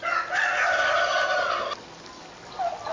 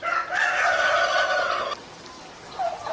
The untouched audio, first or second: first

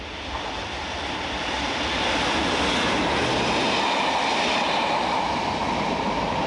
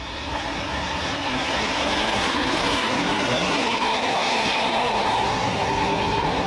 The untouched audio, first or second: first